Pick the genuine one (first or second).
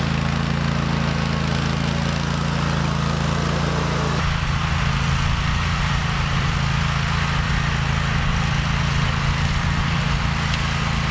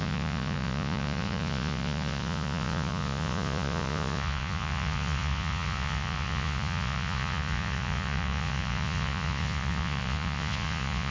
first